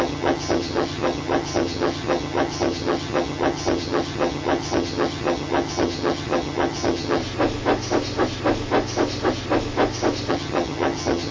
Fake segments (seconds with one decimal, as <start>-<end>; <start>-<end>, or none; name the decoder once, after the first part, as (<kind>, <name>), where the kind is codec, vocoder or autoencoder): 0.0-7.2 (vocoder, HiFi-GAN); 10.3-11.3